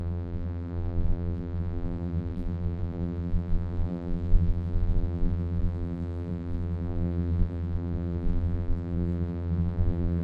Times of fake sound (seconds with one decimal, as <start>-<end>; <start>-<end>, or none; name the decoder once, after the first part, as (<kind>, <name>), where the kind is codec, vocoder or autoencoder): 0.0-10.2 (vocoder, BigVGAN v2)